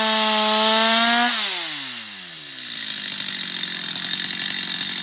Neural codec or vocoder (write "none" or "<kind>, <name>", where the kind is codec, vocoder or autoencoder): none